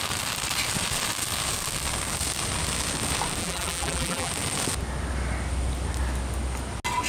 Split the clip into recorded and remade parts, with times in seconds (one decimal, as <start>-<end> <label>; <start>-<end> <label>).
0.0-3.4 recorded; 3.4-4.3 remade; 4.3-7.1 recorded